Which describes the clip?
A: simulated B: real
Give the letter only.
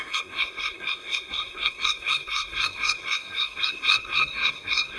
A